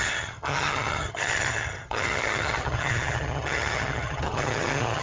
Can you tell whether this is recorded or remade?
remade